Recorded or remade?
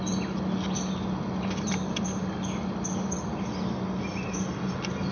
recorded